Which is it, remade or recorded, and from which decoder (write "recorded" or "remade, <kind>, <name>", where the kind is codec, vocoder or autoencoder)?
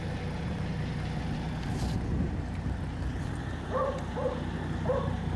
recorded